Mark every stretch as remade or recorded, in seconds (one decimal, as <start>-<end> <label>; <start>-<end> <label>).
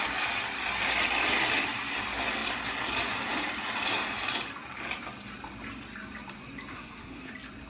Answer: 0.0-6.7 recorded; 6.7-7.3 remade; 7.3-7.7 recorded